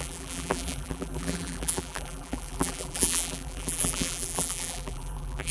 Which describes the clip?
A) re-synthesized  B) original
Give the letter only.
A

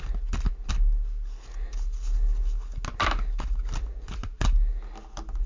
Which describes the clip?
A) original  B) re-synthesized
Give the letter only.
A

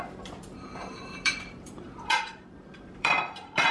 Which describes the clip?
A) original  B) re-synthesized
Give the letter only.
B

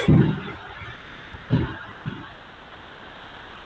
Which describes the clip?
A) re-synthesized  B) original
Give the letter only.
B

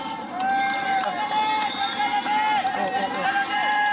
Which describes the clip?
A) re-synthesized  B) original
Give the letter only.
B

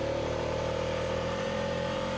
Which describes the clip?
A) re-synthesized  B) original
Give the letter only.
A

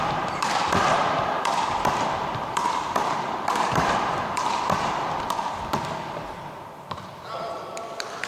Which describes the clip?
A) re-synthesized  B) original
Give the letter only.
A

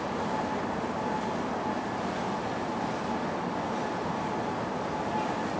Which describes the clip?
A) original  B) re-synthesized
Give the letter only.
A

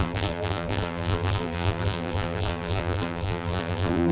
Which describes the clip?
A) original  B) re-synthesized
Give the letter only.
B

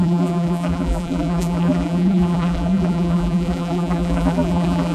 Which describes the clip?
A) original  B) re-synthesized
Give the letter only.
B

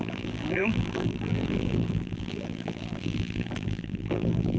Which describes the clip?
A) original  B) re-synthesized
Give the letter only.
B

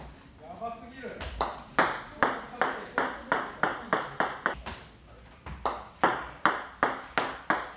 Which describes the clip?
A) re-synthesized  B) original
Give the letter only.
B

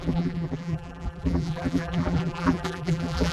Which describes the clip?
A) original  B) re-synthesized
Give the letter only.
B